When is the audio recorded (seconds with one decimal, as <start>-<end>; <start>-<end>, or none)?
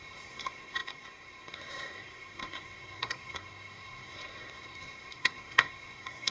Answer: none